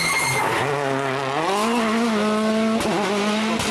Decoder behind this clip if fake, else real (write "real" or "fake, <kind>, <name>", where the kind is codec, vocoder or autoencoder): real